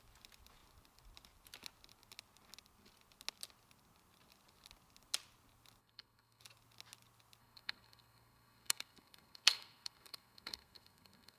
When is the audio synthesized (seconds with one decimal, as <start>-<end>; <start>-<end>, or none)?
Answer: 5.8-6.4; 7.4-11.4